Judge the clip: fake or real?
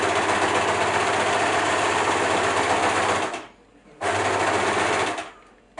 real